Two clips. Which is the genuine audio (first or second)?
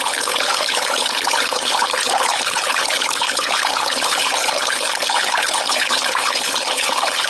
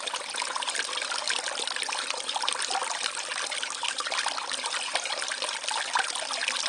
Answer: second